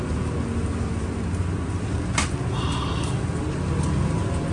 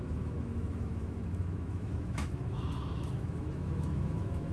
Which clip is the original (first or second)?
first